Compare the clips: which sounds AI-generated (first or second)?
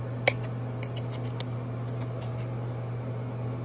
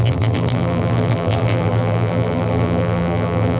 second